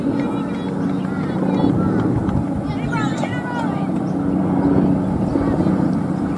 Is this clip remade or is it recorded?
recorded